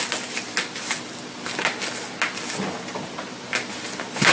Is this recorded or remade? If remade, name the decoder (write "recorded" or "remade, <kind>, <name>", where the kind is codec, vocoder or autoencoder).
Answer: recorded